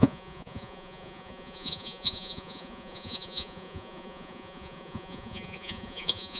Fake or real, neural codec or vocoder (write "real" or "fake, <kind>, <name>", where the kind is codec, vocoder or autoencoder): fake, vocoder, Vocos